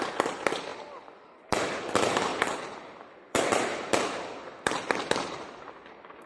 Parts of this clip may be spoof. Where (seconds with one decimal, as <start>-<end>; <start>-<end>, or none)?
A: none